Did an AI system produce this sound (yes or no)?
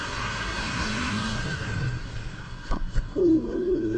yes